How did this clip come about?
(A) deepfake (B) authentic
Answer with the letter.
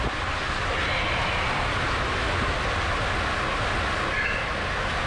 B